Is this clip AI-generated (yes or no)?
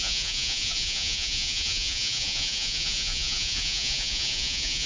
yes